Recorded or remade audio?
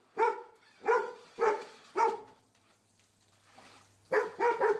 recorded